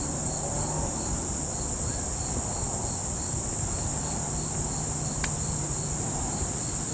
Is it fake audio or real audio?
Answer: real